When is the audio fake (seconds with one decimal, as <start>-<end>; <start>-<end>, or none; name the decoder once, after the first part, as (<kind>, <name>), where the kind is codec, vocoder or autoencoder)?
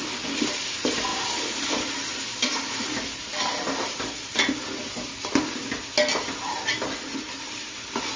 none